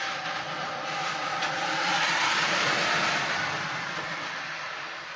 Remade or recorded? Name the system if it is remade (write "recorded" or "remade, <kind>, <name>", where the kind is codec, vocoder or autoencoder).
remade, vocoder, BigVGAN v2